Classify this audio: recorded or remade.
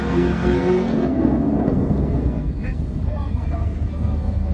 remade